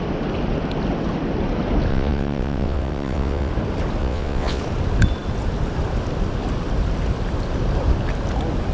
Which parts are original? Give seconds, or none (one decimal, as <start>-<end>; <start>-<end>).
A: 0.0-1.9; 3.5-4.0; 4.6-8.7